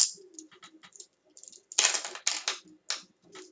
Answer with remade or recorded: recorded